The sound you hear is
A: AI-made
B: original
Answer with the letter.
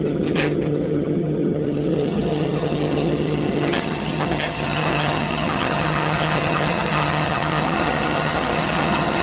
A